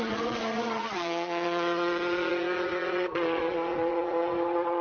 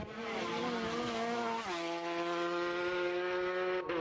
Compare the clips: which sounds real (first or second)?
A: second